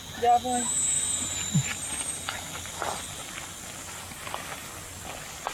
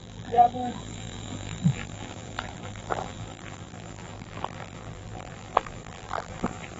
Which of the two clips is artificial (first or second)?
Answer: second